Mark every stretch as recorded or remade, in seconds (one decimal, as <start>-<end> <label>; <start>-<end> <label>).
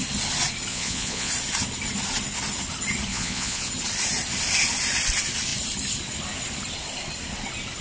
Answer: 0.0-0.7 recorded; 0.7-1.3 remade; 1.3-3.1 recorded; 3.1-3.7 remade; 3.7-7.8 recorded